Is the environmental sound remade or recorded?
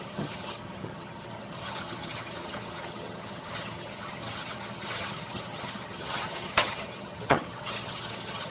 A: remade